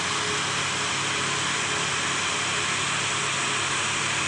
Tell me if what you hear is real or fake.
fake